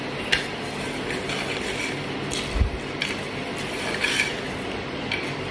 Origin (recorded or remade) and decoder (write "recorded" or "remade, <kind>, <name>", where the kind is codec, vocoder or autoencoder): recorded